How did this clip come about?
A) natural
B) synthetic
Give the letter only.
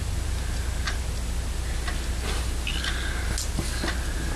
A